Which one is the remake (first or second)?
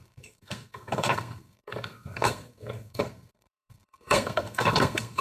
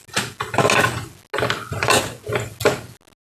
first